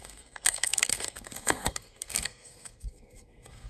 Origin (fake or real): fake